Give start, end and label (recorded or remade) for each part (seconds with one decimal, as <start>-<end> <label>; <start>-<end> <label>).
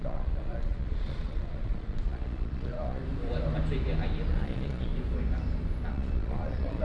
0.0-3.0 remade; 3.0-4.3 recorded; 4.3-4.9 remade; 4.9-5.9 recorded; 5.9-6.8 remade